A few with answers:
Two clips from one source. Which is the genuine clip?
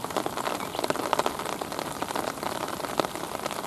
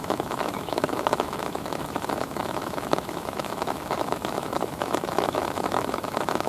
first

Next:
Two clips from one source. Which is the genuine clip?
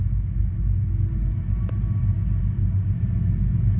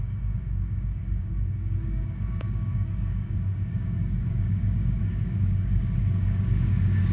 first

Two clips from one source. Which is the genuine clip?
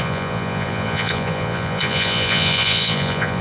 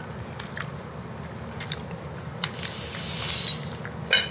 second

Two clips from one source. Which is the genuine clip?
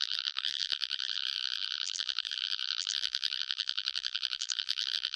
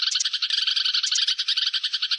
second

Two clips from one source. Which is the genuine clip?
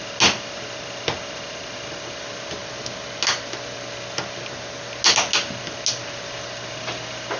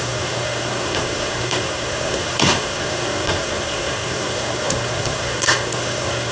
first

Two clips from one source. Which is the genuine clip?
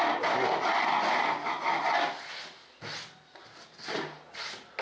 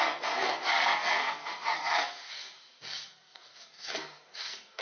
first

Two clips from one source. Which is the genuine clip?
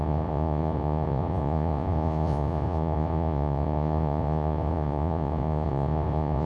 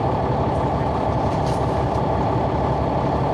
second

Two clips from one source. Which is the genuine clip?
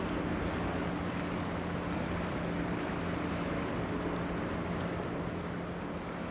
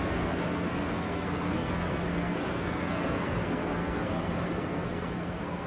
first